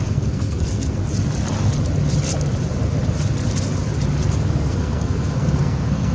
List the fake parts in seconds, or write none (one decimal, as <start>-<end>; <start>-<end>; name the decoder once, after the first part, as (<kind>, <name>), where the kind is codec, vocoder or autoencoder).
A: 0.0-1.0 (codec, SNAC); 4.3-6.1